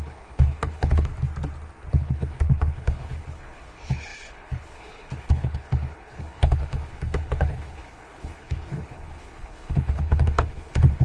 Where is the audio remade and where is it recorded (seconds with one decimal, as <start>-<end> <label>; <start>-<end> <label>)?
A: 0.0-1.1 remade; 1.1-1.9 recorded; 1.9-11.0 remade